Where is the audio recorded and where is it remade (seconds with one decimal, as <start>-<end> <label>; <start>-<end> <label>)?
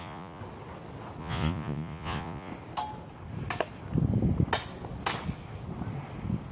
0.0-0.4 remade; 0.4-1.2 recorded; 1.2-2.5 remade; 2.5-6.5 recorded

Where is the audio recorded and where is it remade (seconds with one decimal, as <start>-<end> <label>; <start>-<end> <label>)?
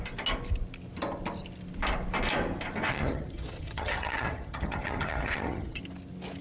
0.0-2.9 recorded; 2.9-5.8 remade; 5.8-6.4 recorded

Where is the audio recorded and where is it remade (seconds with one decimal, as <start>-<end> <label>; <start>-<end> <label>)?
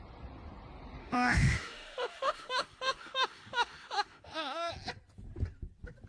0.0-1.0 recorded; 1.0-4.7 remade; 4.7-6.1 recorded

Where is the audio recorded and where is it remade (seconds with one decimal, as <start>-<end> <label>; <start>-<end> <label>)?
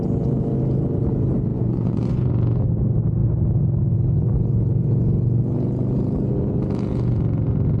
0.0-1.5 recorded; 1.5-2.3 remade; 2.3-7.8 recorded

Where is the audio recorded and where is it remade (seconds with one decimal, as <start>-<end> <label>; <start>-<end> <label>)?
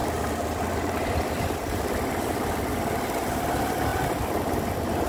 0.0-2.3 remade; 2.3-3.9 recorded; 3.9-5.1 remade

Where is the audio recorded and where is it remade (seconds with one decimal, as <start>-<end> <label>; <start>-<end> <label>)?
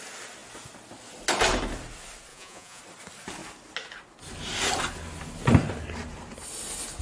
0.0-2.3 recorded; 2.3-2.8 remade; 2.8-7.0 recorded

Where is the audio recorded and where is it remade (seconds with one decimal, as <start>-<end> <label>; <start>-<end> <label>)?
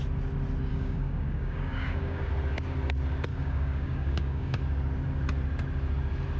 0.0-0.7 recorded; 0.7-2.3 remade; 2.3-3.3 recorded; 3.3-4.6 remade; 4.6-6.4 recorded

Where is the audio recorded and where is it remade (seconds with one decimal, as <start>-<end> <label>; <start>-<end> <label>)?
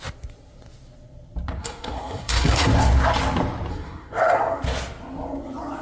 0.0-1.6 recorded; 1.6-2.7 remade; 2.7-3.7 recorded; 3.7-4.6 remade; 4.6-5.8 recorded